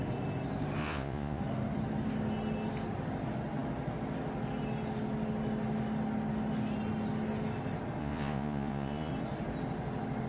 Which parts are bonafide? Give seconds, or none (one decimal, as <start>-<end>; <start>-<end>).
0.0-0.8; 1.4-8.0; 9.1-10.3

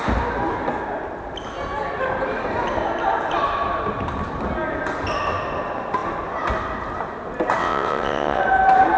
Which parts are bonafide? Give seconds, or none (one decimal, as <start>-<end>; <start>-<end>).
0.0-7.6; 8.4-9.0

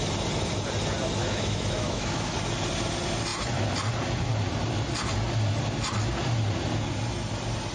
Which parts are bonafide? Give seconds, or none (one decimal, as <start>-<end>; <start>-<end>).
0.0-1.2; 2.3-7.7

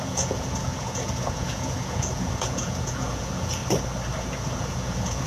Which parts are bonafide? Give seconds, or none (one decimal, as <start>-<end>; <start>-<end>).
3.6-4.6

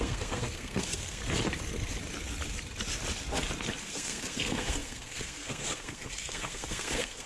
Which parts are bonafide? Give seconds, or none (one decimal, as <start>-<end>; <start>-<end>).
1.2-3.8

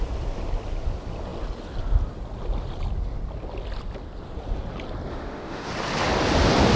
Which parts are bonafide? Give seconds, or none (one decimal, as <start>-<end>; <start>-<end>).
0.0-5.1; 5.7-6.8

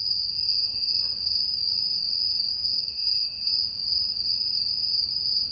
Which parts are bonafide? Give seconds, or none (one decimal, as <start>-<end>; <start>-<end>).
0.9-2.5; 3.5-5.5